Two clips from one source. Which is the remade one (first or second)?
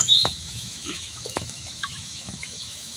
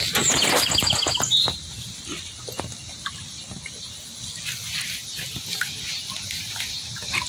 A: first